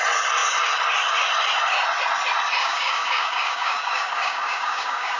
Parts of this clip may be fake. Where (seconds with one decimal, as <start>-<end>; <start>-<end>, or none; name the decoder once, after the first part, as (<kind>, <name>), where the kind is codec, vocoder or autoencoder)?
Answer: 2.6-5.2 (codec, DAC)